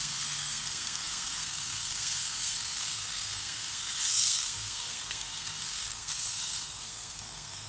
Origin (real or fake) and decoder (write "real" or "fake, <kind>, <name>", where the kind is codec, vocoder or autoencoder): fake, codec, SNAC